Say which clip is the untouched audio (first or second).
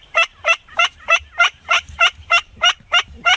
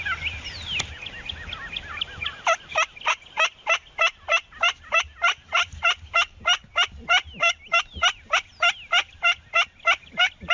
second